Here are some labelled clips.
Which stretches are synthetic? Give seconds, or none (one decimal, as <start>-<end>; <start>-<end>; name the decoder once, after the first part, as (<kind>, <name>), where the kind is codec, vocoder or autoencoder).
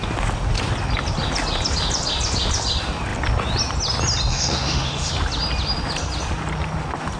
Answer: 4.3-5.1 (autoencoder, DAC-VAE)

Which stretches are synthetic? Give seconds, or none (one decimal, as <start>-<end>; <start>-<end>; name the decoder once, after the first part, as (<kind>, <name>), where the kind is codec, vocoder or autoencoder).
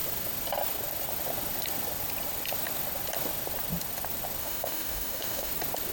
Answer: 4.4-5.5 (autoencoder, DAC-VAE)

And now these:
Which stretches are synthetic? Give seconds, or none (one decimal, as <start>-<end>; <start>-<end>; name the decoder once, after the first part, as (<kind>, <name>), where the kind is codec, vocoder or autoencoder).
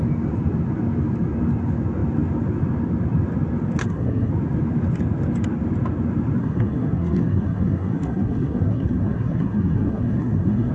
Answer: 3.8-4.3 (codec, SNAC); 6.4-10.7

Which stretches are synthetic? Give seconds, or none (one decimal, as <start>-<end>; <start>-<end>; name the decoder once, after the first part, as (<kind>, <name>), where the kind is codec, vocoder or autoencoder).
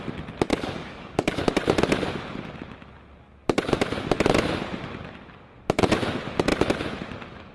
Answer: 0.5-1.4 (codec, DAC)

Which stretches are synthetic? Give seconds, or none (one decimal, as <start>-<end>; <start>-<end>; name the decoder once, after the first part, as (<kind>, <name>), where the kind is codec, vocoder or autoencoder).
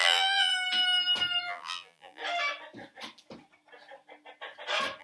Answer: 0.0-0.5 (vocoder, BigVGAN v2); 1.4-2.2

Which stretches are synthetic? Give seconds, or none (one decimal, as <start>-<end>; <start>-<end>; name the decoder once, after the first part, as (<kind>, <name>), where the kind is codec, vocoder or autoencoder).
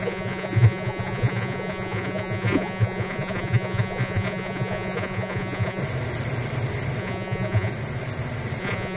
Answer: 0.0-5.8 (vocoder, Vocos); 7.0-7.7; 8.6-9.0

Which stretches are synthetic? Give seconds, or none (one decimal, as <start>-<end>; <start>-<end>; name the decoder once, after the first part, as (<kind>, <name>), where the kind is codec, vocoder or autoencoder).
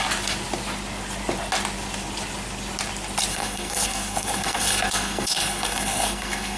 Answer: 3.3-6.6 (codec, SNAC)